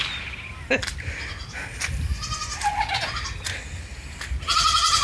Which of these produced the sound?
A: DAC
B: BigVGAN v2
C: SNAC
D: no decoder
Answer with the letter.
D